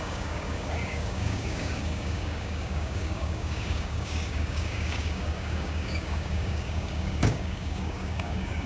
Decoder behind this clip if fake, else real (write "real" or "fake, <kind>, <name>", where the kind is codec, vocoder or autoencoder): fake, codec, DAC